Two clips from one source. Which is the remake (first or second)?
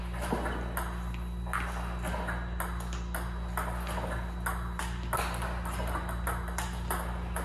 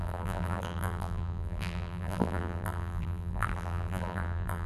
second